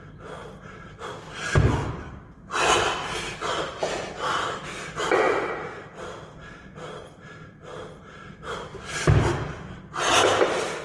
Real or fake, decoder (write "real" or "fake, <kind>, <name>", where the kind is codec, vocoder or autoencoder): real